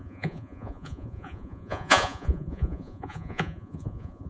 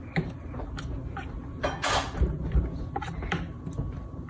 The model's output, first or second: first